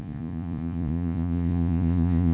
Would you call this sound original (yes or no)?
no